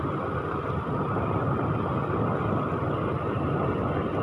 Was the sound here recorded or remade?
recorded